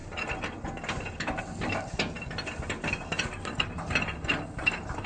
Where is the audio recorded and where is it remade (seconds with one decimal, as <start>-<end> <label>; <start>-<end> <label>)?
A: 0.0-5.1 recorded